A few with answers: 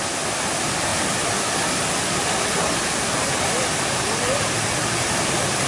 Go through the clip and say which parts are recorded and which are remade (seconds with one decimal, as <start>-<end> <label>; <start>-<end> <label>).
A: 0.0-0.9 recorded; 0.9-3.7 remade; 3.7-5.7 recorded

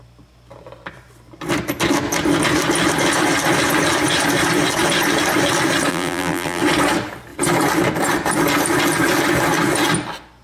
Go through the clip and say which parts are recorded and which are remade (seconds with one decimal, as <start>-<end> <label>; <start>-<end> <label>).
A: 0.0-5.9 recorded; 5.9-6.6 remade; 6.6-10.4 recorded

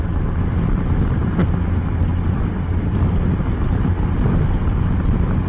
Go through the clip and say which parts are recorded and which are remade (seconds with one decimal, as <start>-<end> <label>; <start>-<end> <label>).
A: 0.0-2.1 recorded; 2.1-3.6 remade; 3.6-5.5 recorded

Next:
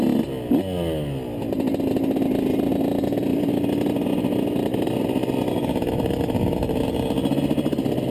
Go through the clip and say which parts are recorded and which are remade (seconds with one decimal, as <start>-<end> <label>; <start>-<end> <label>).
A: 0.0-8.1 recorded

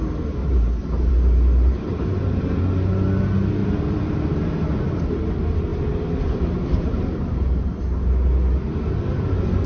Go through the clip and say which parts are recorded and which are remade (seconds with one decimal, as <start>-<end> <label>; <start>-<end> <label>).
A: 0.0-0.4 recorded; 0.4-1.1 remade; 1.1-1.9 recorded; 1.9-2.6 remade; 2.6-3.6 recorded; 3.6-5.0 remade; 5.0-5.7 recorded; 5.7-7.8 remade; 7.8-9.7 recorded